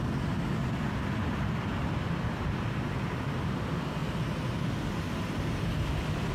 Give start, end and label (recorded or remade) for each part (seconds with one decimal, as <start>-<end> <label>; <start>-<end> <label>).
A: 0.0-6.3 recorded